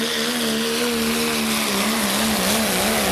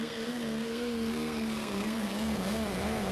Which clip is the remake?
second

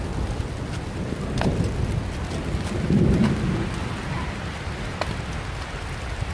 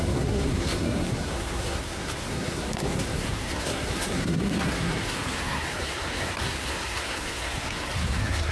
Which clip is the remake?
second